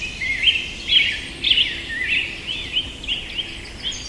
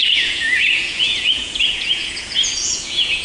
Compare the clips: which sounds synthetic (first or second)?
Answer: second